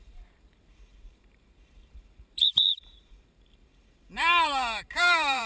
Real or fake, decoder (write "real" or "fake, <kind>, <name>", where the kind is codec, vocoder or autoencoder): fake, vocoder, BigVGAN v2